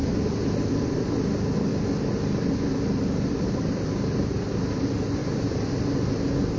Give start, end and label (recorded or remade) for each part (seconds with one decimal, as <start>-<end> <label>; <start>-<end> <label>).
0.0-5.2 recorded; 5.2-5.7 remade; 5.7-6.6 recorded